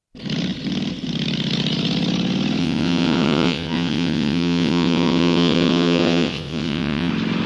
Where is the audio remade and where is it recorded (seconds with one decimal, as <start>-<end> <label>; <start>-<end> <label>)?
0.0-2.6 recorded; 2.6-7.1 remade; 7.1-7.5 recorded